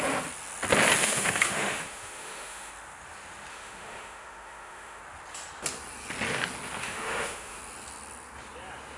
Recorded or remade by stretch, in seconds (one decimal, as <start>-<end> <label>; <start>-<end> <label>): 0.0-1.0 recorded; 1.0-2.7 remade; 2.7-3.5 recorded; 3.5-5.0 remade; 5.0-6.8 recorded; 6.8-7.6 remade; 7.6-9.0 recorded